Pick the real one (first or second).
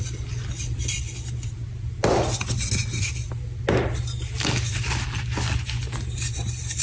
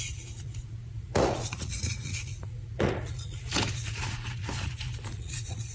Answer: first